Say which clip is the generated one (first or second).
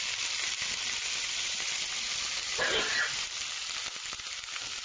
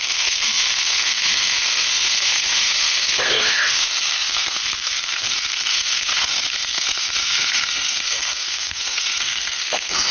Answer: second